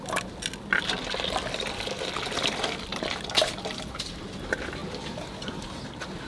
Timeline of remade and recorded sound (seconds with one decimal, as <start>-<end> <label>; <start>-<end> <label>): 0.0-6.3 recorded